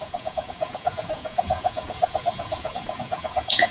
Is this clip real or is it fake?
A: fake